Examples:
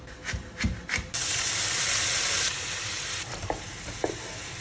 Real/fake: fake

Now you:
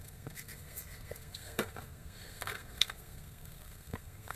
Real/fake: fake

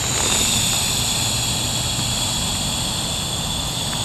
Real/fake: real